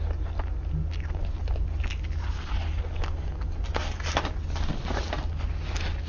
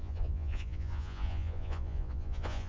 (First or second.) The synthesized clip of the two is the second